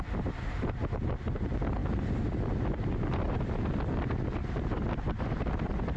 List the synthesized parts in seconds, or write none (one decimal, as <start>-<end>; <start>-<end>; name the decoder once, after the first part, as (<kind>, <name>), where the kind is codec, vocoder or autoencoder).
none